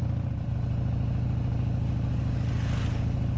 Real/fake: real